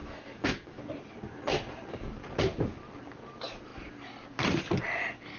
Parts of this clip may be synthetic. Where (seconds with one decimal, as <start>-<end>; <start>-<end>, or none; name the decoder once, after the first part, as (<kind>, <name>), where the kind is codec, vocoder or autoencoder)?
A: 0.0-0.8 (autoencoder, DAC-VAE)

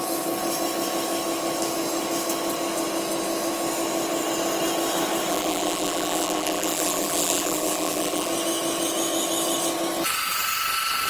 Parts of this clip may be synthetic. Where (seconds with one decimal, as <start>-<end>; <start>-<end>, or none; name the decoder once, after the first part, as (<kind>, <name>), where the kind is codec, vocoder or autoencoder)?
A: 5.3-8.3 (vocoder, BigVGAN v2)

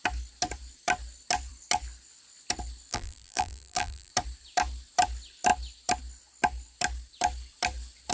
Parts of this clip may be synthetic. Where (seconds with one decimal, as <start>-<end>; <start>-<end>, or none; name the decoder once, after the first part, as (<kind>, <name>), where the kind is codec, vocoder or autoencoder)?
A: 2.9-4.1 (vocoder, BigVGAN v2)

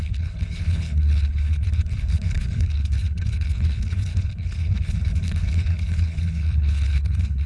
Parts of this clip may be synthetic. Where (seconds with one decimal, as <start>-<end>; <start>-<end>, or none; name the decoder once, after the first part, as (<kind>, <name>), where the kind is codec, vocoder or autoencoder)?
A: 0.0-7.5 (codec, HILCodec)